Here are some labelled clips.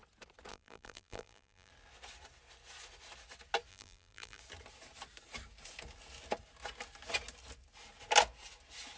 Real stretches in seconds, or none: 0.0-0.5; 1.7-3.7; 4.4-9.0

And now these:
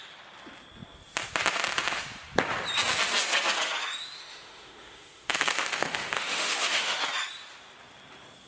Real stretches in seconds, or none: 0.0-4.2; 7.0-8.5

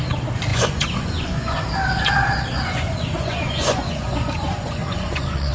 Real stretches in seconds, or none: 0.0-0.5; 1.6-2.5

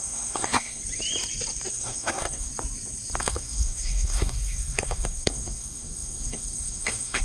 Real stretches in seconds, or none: 0.8-1.7; 2.5-3.2